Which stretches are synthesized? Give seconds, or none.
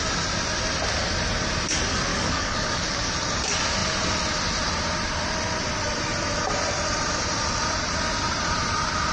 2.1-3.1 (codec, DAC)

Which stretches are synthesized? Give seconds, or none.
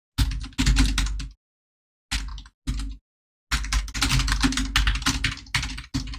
none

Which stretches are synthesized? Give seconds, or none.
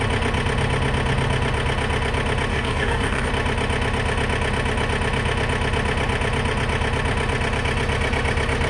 2.5-3.3 (codec, DAC)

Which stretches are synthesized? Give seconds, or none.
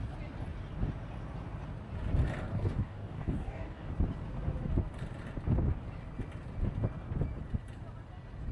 2.5-3.9 (codec, DAC)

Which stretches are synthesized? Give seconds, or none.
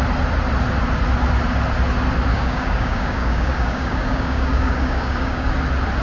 2.3-5.5 (codec, DAC)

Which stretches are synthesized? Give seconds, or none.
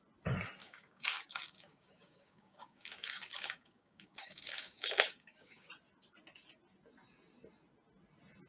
0.6-5.7 (codec, DAC)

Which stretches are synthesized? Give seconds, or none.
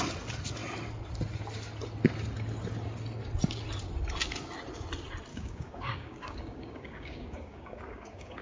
5.3-8.4 (codec, DAC)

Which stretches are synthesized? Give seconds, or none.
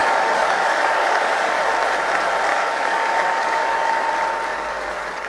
0.0-1.6 (codec, DAC); 2.5-4.1; 4.5-5.3